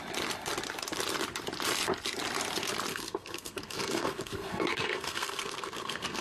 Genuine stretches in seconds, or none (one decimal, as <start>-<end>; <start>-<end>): 0.0-2.9